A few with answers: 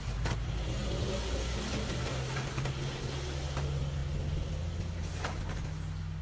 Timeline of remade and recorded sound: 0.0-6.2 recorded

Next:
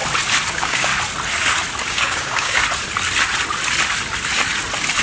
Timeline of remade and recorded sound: 0.0-0.5 recorded; 0.5-0.9 remade; 0.9-1.9 recorded; 1.9-2.6 remade; 2.6-5.0 recorded

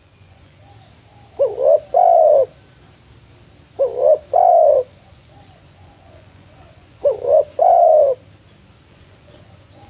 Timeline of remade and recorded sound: 0.0-0.6 remade; 0.6-4.5 recorded; 4.5-7.9 remade; 7.9-8.9 recorded; 8.9-9.9 remade

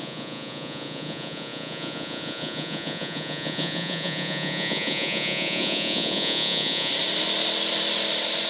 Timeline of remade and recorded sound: 0.0-6.9 remade; 6.9-8.5 recorded

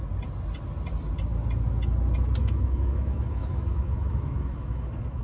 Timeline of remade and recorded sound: 0.0-2.4 recorded; 2.4-5.2 remade

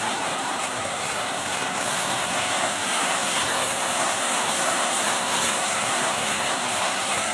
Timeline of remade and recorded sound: 0.0-7.3 remade